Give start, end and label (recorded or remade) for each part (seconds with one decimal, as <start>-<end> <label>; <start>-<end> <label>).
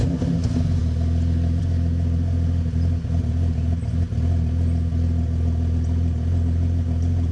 0.0-7.3 recorded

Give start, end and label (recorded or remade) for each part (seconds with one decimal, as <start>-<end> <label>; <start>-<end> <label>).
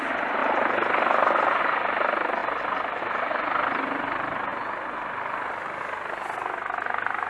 0.0-7.3 recorded